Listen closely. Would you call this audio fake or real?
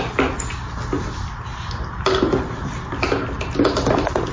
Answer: real